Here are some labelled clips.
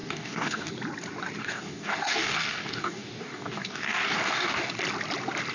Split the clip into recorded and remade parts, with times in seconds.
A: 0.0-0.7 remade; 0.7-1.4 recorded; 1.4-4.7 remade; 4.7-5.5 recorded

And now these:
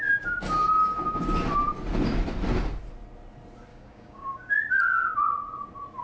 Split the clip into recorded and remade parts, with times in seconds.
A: 0.0-3.7 recorded; 3.7-4.7 remade; 4.7-6.0 recorded

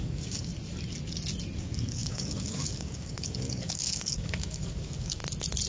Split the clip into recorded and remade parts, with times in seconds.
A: 0.0-0.5 remade; 0.5-1.6 recorded; 1.6-5.2 remade; 5.2-5.7 recorded

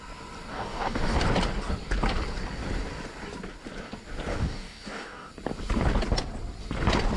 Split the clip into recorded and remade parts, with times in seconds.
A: 0.0-0.5 recorded; 0.5-1.2 remade; 1.2-4.3 recorded; 4.3-5.3 remade; 5.3-7.2 recorded

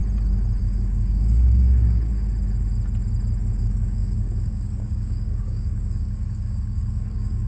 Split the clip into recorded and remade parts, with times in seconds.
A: 0.0-0.6 recorded; 0.6-2.1 remade; 2.1-3.6 recorded; 3.6-7.5 remade